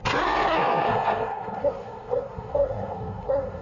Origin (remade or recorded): remade